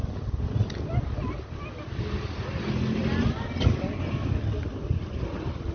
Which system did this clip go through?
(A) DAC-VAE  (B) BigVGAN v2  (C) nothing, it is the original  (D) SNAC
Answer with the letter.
C